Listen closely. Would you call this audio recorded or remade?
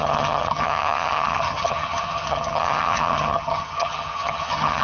remade